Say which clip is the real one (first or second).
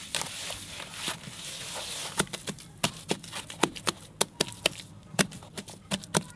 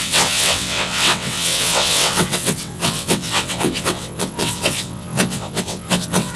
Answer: first